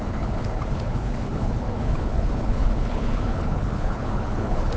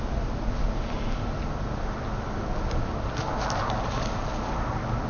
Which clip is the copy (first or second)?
first